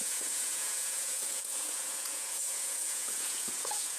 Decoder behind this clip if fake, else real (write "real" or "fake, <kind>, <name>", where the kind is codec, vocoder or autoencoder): fake, vocoder, Vocos